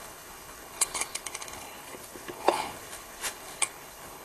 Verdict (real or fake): fake